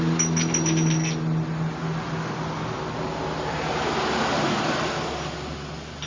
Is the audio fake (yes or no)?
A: no